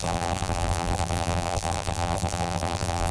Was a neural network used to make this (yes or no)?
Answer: yes